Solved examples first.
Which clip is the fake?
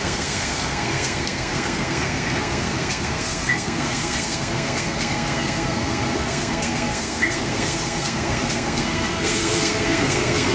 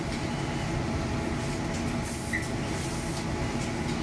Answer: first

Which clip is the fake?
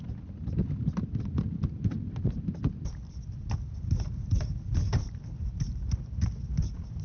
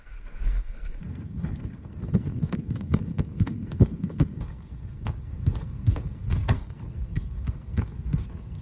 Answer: second